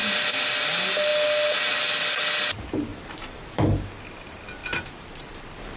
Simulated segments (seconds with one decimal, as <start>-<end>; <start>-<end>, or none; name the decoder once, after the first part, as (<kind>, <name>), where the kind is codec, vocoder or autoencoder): 2.9-3.9 (vocoder, BigVGAN v2); 4.6-5.8